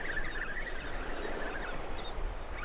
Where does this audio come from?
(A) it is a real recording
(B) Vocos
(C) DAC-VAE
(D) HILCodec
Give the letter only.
A